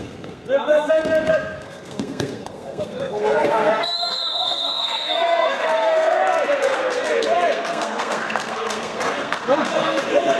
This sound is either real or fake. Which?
fake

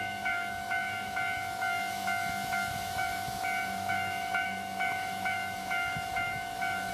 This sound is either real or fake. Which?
fake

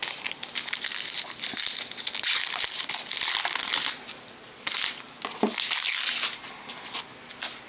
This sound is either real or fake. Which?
real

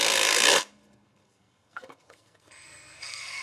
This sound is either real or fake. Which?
fake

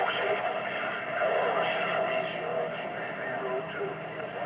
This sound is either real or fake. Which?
real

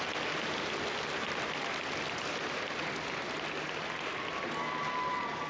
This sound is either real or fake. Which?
real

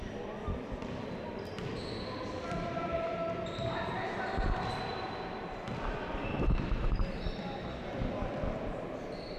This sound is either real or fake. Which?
real